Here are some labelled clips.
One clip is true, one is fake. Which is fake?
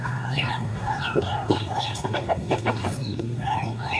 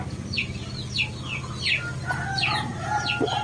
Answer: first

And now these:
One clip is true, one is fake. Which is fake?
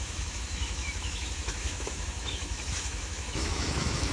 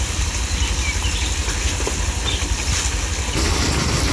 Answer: first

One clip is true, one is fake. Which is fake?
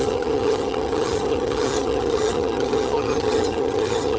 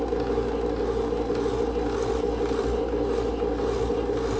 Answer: first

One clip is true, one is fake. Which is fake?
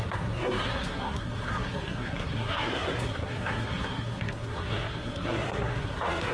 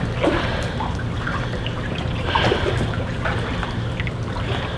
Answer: first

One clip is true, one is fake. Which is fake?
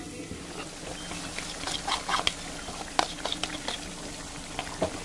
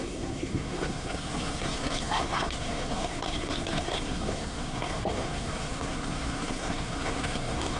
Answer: second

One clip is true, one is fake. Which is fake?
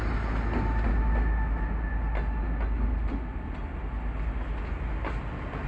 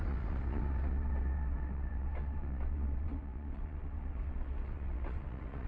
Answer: second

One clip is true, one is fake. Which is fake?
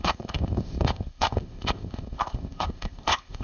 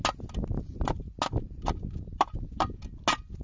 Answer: first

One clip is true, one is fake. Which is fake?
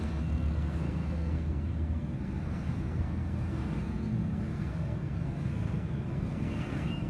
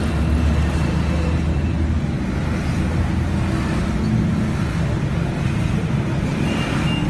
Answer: first